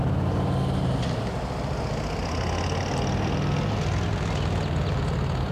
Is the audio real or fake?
real